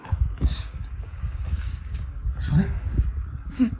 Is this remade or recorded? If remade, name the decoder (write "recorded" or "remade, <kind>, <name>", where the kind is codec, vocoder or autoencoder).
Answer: remade, codec, DAC